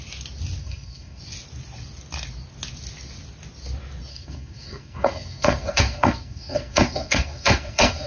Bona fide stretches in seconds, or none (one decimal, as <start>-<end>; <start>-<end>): 0.0-0.6; 1.2-4.1